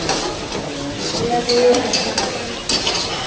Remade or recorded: recorded